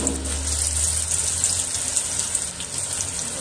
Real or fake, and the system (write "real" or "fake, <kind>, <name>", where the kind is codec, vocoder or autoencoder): real